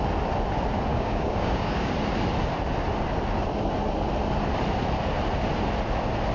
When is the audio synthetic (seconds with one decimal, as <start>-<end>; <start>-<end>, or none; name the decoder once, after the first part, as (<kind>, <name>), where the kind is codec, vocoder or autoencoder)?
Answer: 0.9-1.9 (codec, DAC)

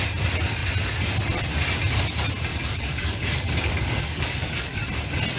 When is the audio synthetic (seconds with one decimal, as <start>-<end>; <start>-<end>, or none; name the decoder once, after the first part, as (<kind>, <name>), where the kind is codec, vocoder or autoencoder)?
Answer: 2.5-4.8 (codec, DAC)

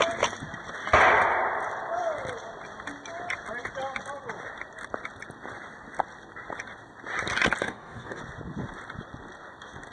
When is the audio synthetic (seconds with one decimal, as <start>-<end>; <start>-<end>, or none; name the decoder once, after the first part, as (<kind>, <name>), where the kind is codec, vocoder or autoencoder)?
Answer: 7.6-8.2 (codec, DAC)

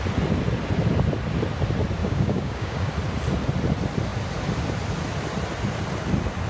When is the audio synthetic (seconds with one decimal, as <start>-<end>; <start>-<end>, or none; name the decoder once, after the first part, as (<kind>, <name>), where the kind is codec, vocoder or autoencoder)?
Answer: 2.0-2.9 (codec, DAC)